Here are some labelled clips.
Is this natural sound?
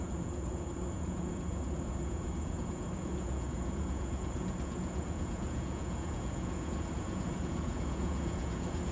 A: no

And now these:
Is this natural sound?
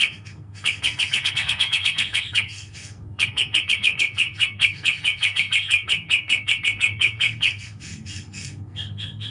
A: no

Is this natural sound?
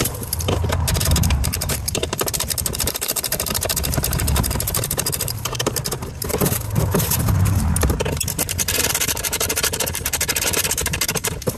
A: no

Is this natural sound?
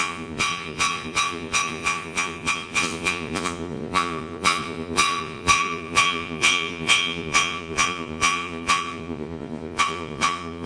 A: no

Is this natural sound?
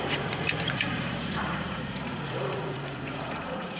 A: no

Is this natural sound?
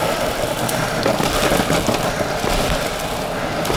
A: yes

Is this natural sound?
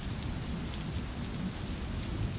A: yes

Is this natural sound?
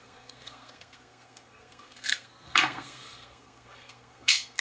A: no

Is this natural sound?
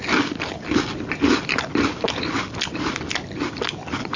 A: yes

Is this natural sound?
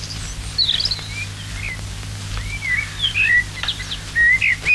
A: yes